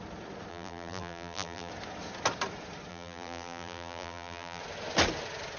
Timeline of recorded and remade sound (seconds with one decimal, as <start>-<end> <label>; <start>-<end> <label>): 0.0-0.5 recorded; 0.5-1.7 remade; 1.7-2.9 recorded; 2.9-4.6 remade; 4.6-5.6 recorded